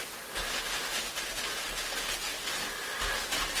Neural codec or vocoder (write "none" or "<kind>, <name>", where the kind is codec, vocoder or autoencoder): none